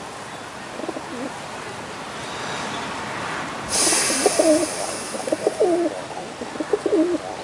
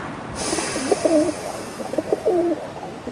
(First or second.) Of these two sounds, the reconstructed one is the second